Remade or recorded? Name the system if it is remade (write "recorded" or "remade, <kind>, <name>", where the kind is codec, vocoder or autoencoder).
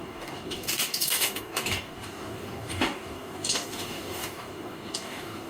remade, codec, DAC